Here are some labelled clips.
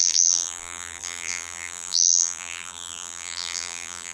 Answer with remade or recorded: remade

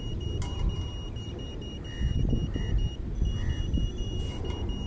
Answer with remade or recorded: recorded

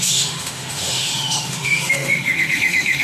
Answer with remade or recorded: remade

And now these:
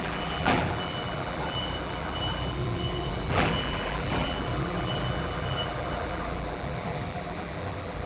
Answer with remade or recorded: remade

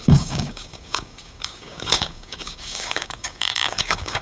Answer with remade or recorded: remade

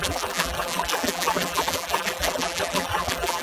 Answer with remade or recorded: remade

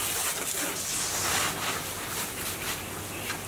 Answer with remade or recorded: recorded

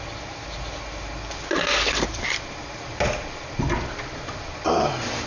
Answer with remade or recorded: recorded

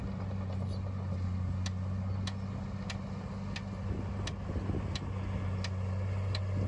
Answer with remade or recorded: recorded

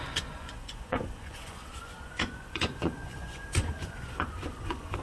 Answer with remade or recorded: remade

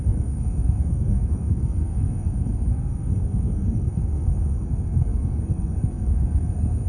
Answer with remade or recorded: remade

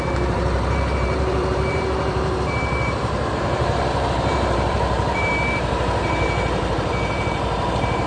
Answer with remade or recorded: remade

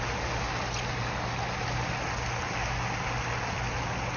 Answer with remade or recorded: recorded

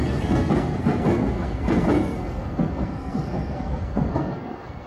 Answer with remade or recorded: remade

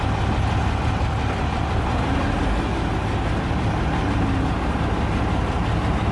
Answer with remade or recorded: recorded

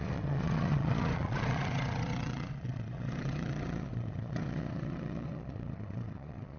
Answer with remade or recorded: remade